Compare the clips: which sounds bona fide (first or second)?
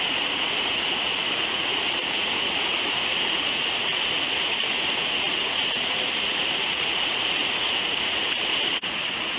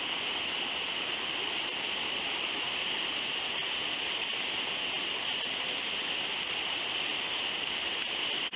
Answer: second